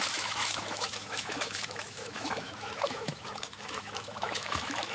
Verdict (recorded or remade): remade